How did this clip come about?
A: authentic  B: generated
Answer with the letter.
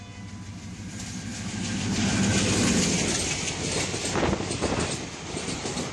A